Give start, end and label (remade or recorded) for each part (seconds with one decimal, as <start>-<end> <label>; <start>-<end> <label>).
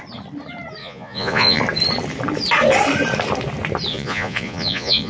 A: 0.0-0.8 recorded; 0.8-1.6 remade; 1.6-3.9 recorded; 3.9-5.1 remade